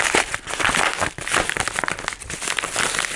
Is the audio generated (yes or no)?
no